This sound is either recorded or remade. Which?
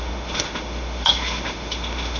remade